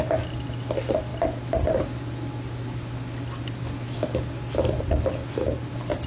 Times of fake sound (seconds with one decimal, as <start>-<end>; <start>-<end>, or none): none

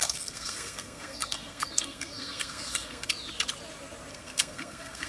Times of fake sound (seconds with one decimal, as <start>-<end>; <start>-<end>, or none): 0.0-3.1; 4.1-5.1

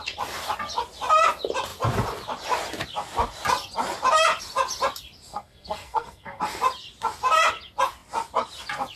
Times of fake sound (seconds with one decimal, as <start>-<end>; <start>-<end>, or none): 5.3-6.4